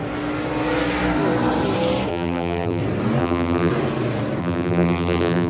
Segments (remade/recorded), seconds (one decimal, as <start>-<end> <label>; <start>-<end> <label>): 0.0-2.1 recorded; 2.1-2.8 remade; 2.8-3.2 recorded; 3.2-3.7 remade; 3.7-4.4 recorded; 4.4-5.5 remade